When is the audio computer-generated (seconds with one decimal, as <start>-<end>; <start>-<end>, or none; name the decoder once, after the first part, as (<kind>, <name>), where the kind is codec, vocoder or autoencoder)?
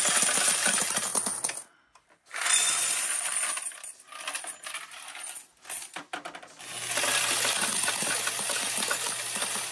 none